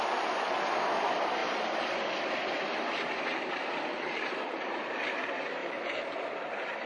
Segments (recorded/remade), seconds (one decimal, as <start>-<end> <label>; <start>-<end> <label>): 0.0-3.9 recorded; 3.9-4.7 remade; 4.7-5.6 recorded; 5.6-6.5 remade; 6.5-6.9 recorded